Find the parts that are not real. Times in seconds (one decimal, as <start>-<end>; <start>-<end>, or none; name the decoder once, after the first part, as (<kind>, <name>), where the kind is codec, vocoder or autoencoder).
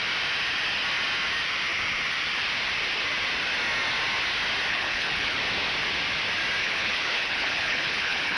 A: 4.7-5.4 (codec, HILCodec); 6.6-8.4